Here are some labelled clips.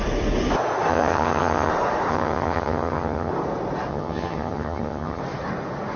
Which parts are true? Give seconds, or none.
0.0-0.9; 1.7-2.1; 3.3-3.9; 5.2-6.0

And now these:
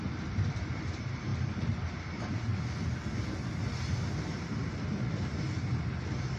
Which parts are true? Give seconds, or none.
2.5-3.7; 5.7-6.4

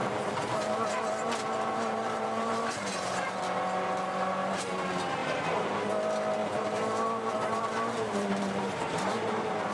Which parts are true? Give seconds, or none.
3.4-5.2; 5.9-6.4

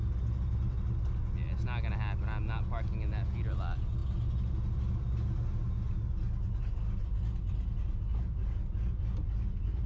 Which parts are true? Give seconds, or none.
0.0-9.9